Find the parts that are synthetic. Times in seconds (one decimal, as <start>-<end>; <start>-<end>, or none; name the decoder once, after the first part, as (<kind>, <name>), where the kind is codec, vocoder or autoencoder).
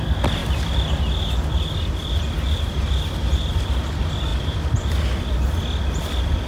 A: 0.4-1.0 (vocoder, BigVGAN v2)